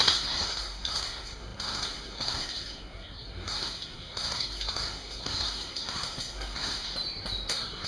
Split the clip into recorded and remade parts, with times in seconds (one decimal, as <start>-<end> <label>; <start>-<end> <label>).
0.0-6.9 remade; 6.9-7.5 recorded; 7.5-7.9 remade